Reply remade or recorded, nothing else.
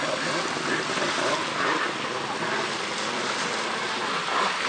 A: recorded